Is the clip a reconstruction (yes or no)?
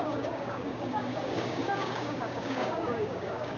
yes